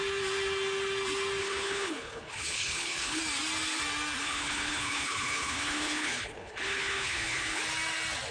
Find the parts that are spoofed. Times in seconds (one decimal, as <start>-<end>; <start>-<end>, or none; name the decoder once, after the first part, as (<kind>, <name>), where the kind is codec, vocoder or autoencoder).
1.4-3.2 (codec, HILCodec); 4.2-7.6